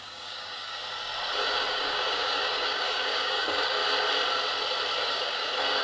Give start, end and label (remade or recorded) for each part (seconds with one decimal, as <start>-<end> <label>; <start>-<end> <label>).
0.0-0.8 remade; 0.8-1.7 recorded; 1.7-3.8 remade; 3.8-5.1 recorded; 5.1-5.8 remade